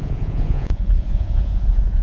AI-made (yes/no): yes